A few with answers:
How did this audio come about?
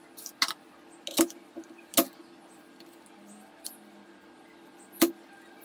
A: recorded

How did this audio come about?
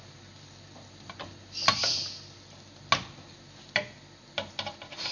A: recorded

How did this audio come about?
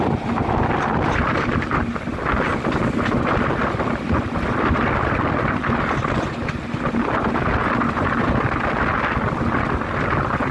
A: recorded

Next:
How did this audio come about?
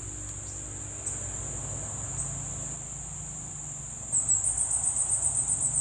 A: recorded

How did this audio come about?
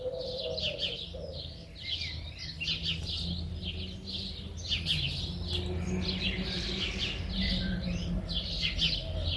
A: recorded